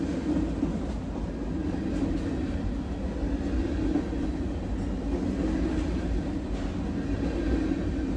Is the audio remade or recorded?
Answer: recorded